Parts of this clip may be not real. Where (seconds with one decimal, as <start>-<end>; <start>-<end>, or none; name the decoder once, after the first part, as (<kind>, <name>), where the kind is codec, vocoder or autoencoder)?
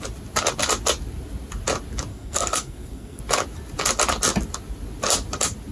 2.1-3.2 (codec, SNAC)